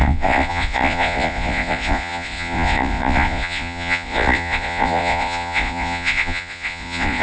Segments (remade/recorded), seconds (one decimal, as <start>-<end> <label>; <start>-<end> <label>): 0.0-7.2 remade